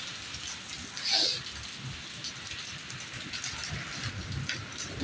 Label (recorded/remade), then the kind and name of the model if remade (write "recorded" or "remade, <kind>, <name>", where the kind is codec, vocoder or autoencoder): recorded